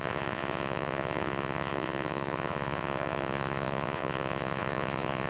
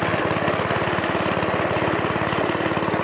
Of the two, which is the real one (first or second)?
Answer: second